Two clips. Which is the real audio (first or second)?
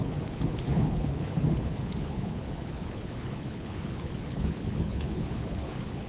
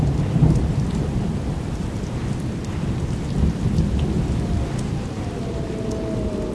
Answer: second